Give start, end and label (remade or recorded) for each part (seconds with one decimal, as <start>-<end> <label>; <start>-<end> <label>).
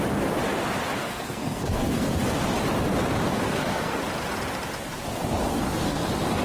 0.0-1.0 recorded; 1.0-2.2 remade; 2.2-3.3 recorded; 3.3-4.0 remade; 4.0-5.5 recorded; 5.5-6.0 remade; 6.0-6.4 recorded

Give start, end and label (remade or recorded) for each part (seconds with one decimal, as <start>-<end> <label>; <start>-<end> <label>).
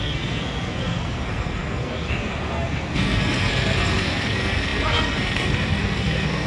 0.0-6.5 remade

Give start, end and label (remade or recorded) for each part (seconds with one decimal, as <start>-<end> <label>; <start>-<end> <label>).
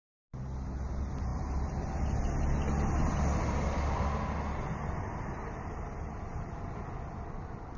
0.0-7.8 recorded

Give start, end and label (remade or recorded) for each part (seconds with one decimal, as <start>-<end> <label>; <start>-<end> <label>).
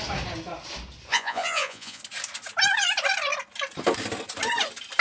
0.0-1.1 recorded; 1.1-2.0 remade; 2.0-5.0 recorded